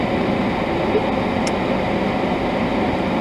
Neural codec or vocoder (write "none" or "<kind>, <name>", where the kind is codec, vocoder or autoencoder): none